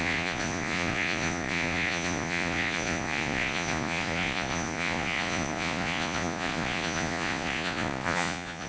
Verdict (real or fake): fake